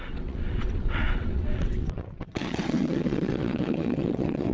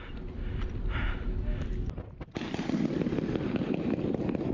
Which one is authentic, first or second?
second